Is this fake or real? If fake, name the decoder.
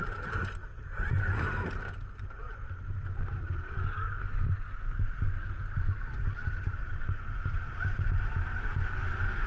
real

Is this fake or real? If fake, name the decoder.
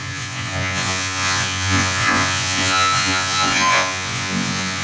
fake, vocoder, Vocos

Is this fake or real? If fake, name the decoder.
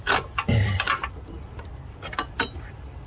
real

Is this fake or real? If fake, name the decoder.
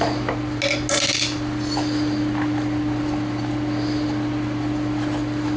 real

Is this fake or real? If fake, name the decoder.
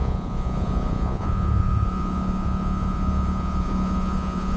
fake, vocoder, Vocos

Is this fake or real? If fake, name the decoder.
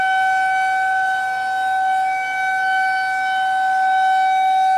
real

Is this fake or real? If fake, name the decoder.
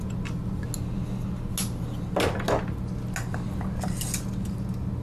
real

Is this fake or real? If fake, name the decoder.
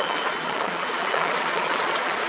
fake, vocoder, Vocos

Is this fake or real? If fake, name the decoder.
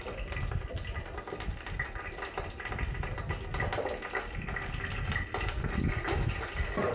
real